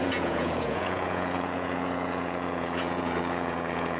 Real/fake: fake